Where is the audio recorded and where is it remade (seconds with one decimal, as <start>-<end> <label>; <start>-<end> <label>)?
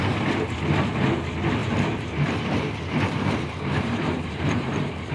0.0-1.6 recorded; 1.6-5.1 remade